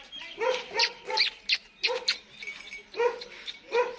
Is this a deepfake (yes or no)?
no